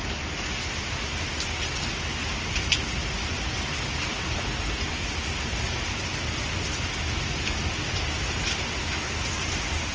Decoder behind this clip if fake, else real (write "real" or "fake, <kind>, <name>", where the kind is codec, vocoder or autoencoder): real